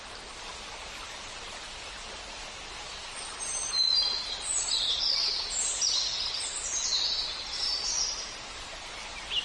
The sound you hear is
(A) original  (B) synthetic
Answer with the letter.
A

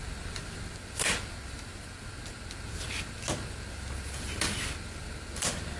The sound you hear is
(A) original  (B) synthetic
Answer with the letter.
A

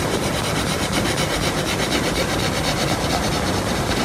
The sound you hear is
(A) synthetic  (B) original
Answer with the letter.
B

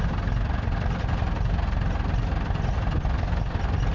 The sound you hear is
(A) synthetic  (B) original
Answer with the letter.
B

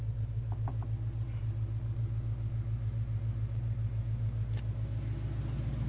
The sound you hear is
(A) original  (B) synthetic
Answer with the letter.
A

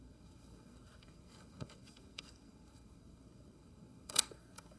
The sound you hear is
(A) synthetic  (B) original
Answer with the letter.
A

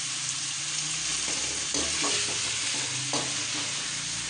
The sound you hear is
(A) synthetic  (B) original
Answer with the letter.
B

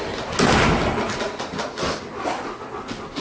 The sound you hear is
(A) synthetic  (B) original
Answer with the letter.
B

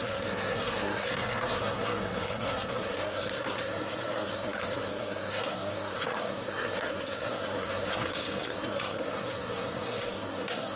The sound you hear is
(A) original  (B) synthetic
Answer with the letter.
B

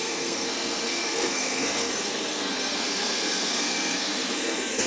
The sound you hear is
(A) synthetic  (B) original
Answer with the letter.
A